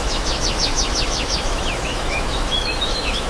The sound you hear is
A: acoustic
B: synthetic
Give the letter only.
B